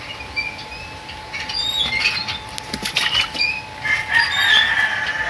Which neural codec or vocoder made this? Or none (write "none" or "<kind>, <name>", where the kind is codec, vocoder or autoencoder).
none